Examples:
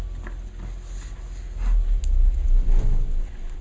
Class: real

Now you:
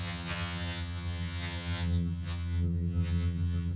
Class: fake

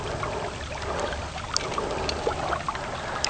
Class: real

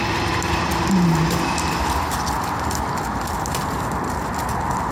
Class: real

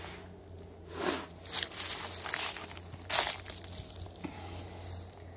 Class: real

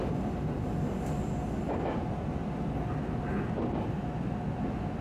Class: real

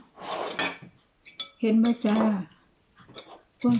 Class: real